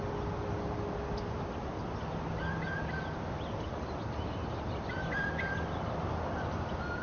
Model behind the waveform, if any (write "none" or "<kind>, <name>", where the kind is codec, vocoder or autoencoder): none